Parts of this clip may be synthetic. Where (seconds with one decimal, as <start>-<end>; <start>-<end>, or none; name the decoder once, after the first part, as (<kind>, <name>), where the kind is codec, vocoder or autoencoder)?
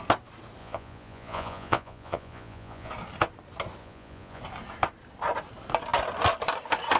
0.6-2.9 (vocoder, Vocos); 3.8-4.4